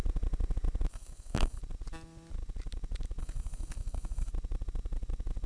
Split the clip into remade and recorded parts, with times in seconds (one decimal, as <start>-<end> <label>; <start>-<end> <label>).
0.0-0.9 recorded; 0.9-1.6 remade; 1.6-3.2 recorded; 3.2-4.3 remade; 4.3-5.5 recorded

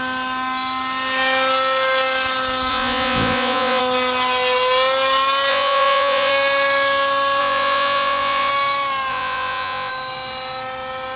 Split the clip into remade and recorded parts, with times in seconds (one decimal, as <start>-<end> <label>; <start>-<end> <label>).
0.0-2.7 recorded; 2.7-3.8 remade; 3.8-5.5 recorded; 5.5-6.3 remade; 6.3-7.4 recorded; 7.4-8.5 remade; 8.5-9.1 recorded; 9.1-9.9 remade; 9.9-11.2 recorded